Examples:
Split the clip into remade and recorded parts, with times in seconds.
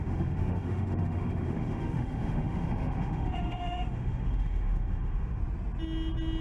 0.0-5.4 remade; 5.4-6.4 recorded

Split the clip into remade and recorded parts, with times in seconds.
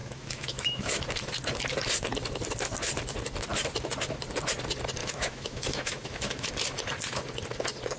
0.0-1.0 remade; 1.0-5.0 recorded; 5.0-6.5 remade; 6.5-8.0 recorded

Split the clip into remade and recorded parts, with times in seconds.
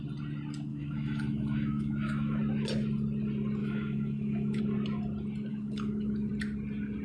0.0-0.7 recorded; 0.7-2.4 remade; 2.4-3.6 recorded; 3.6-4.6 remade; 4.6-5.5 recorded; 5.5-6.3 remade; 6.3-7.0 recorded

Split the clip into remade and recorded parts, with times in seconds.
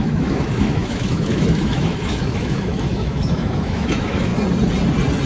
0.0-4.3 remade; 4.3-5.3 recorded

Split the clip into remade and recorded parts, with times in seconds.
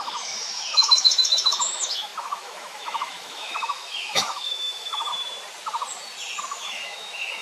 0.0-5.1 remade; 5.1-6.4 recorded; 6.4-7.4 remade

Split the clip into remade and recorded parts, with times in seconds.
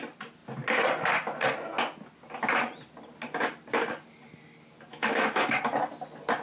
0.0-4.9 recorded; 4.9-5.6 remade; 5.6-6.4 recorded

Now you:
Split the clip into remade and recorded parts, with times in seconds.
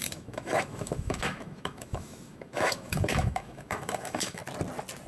0.0-4.4 remade; 4.4-5.1 recorded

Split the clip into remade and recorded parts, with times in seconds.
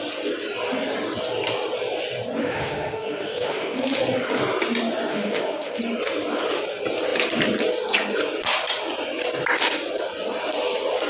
0.0-2.4 recorded; 2.4-4.0 remade; 4.0-5.1 recorded; 5.1-5.8 remade; 5.8-11.1 recorded